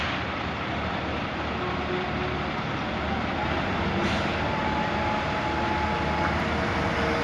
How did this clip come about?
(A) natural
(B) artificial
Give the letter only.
A